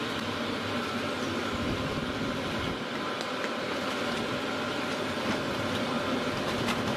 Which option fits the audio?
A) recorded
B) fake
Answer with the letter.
A